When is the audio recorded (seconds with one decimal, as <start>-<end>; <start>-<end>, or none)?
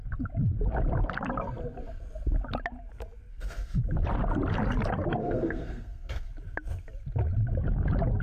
0.0-3.3; 3.8-5.2; 6.3-8.2